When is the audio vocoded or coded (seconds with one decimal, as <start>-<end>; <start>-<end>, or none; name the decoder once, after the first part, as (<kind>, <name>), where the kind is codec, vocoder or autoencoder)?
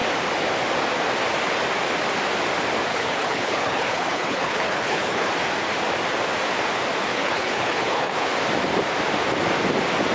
2.9-5.3 (codec, HILCodec); 7.1-8.3